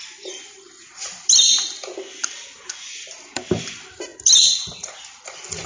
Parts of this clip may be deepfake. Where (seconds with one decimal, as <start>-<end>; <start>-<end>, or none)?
none